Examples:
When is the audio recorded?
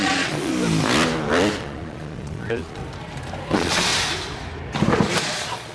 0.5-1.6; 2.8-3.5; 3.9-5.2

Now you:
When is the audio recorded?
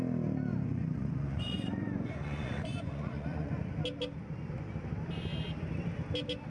0.0-0.5; 3.5-6.5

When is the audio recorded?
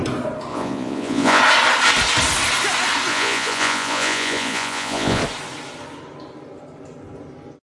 0.0-0.5; 1.4-3.1; 5.2-7.7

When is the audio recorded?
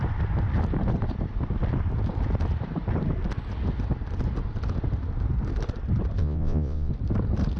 0.0-6.2; 6.9-7.6